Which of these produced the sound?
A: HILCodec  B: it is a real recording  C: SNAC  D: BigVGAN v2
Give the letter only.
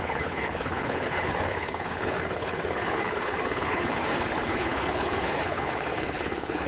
A